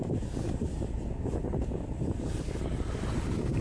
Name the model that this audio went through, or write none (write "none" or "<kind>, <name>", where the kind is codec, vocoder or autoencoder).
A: none